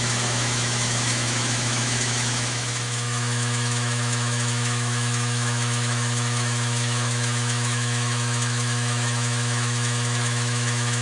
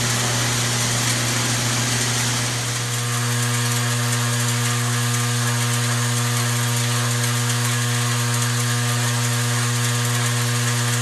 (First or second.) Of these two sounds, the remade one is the first